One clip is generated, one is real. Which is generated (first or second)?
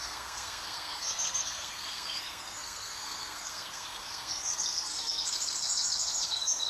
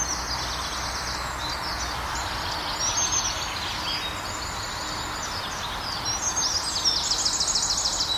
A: first